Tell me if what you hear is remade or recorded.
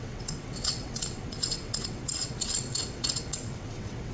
remade